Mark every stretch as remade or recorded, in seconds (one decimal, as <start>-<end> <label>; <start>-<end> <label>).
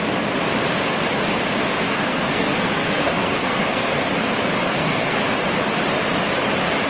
0.0-1.9 recorded; 1.9-4.1 remade; 4.1-4.7 recorded; 4.7-5.2 remade; 5.2-6.9 recorded